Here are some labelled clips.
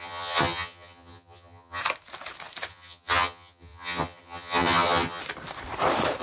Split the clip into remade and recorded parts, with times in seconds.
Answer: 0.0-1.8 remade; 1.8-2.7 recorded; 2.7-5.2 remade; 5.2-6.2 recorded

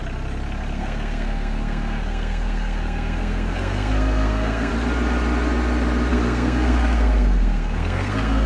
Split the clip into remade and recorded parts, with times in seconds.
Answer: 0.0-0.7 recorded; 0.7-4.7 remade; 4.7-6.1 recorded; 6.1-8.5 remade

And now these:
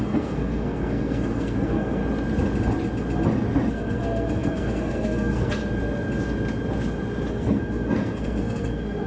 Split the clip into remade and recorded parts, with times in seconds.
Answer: 0.0-2.0 remade; 2.0-3.7 recorded; 3.7-5.6 remade; 5.6-7.3 recorded; 7.3-9.1 remade